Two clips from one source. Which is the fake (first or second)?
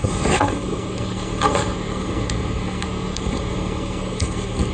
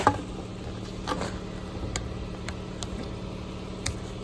first